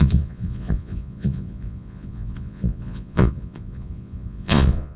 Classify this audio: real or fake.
fake